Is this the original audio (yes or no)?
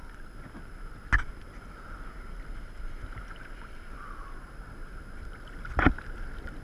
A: yes